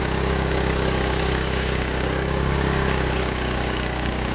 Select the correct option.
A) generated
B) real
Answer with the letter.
A